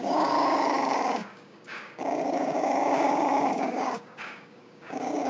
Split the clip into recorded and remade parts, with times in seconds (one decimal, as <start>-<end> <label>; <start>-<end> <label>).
0.0-5.3 remade